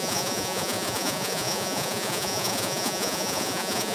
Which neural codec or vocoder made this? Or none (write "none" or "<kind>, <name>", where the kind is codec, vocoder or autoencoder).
vocoder, Vocos